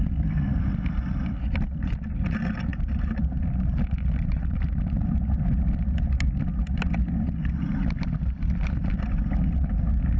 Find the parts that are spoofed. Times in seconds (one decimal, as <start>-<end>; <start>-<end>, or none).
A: 2.7-4.7